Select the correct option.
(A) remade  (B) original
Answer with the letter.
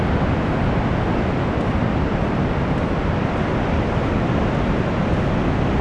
B